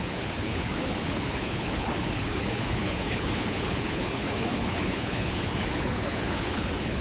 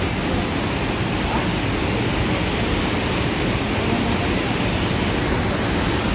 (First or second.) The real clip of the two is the second